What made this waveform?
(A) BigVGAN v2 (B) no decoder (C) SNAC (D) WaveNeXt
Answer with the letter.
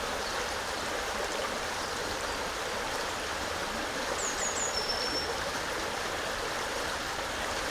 A